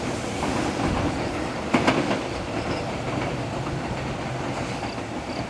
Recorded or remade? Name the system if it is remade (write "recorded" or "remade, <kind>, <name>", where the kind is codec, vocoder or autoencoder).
recorded